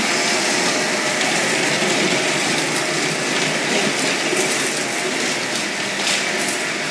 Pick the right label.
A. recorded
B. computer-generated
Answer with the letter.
A